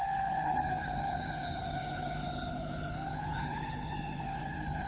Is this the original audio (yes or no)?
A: no